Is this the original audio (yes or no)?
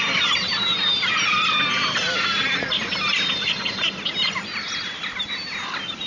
yes